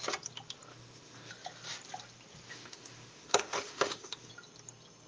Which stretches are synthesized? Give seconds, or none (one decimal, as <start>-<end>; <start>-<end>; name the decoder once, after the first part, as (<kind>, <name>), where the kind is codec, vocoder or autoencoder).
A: 0.7-1.3 (autoencoder, DAC-VAE); 2.5-4.3